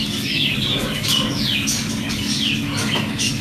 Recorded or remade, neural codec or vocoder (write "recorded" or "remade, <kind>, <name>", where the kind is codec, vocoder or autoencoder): remade, codec, DAC